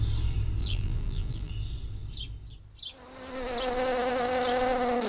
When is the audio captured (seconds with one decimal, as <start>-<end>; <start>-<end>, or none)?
0.0-0.6; 1.5-5.1